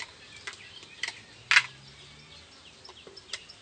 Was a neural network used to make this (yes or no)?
no